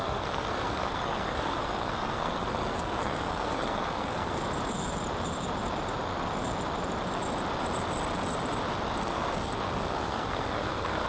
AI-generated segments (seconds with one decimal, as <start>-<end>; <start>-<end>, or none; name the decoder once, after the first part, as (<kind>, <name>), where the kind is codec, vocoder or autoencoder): 0.0-4.4 (codec, SNAC); 9.0-11.1